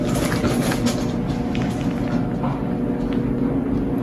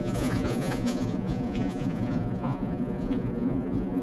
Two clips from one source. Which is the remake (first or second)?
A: second